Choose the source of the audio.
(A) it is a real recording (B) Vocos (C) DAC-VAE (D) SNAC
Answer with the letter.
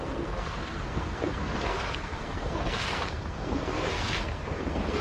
D